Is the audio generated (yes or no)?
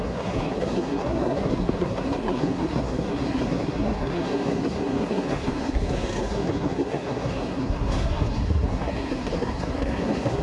yes